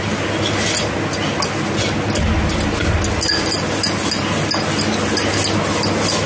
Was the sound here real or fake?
real